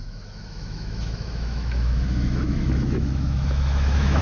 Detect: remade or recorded remade